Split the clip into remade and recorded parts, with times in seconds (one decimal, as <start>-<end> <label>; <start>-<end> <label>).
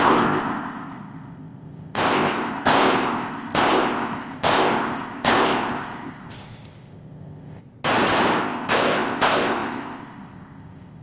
0.0-7.6 remade; 7.6-8.4 recorded; 8.4-11.0 remade